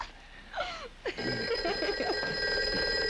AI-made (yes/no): no